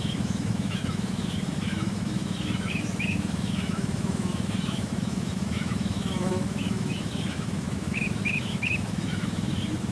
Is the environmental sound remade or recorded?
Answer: remade